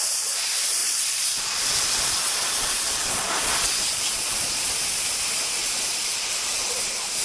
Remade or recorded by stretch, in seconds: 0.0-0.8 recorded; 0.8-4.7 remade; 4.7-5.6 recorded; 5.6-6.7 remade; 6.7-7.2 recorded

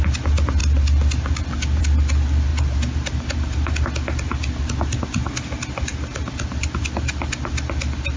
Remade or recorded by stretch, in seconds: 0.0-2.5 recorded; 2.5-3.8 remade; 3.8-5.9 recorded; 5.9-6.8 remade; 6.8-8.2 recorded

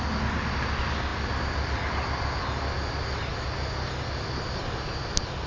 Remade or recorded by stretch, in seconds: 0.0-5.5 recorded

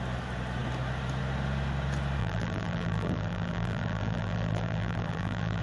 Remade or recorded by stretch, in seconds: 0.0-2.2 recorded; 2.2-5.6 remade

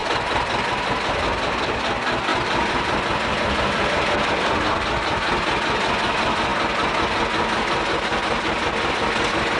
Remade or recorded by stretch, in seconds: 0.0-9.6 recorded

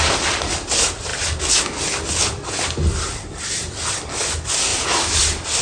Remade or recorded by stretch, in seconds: 0.0-5.6 recorded